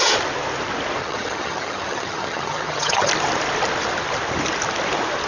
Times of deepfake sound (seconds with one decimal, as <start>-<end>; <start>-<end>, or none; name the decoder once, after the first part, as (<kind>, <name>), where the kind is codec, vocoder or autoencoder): 1.0-3.1 (vocoder, HiFi-GAN)